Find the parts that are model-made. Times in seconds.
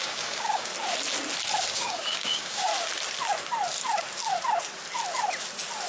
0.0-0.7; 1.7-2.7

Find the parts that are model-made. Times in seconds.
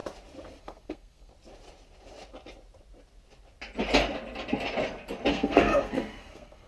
0.6-1.3; 5.3-6.7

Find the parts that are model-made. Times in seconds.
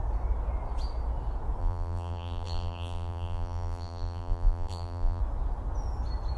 1.6-5.2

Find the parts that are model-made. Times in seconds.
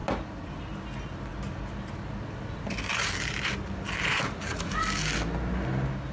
0.0-0.8; 1.3-2.8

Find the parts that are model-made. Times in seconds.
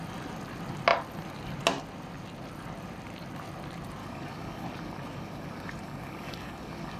4.0-7.0